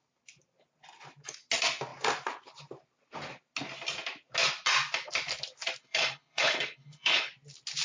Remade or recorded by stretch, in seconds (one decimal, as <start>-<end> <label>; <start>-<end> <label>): 0.0-5.8 recorded; 5.8-7.3 remade; 7.3-7.8 recorded